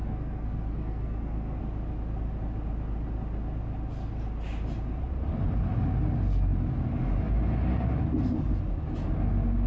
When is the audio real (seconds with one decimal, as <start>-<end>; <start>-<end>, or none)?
1.6-9.7